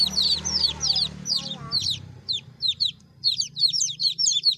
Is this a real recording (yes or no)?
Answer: no